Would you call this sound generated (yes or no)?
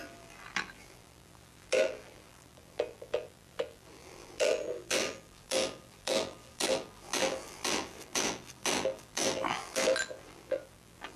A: yes